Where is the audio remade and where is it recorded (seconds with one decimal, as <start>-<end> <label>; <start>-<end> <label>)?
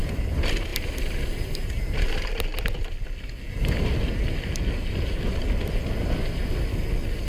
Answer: 0.0-7.3 recorded